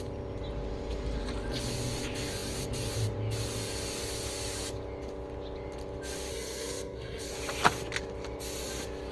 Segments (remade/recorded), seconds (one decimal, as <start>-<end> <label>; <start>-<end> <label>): 0.0-6.3 recorded; 6.3-7.3 remade; 7.3-9.1 recorded